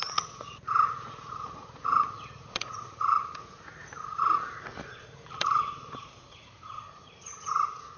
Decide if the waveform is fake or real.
fake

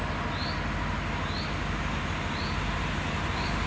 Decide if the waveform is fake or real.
real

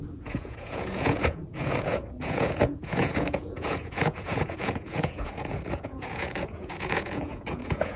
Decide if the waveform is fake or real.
fake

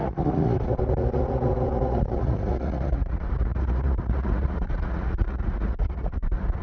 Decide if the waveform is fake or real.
fake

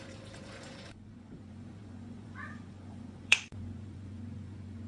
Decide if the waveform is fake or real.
fake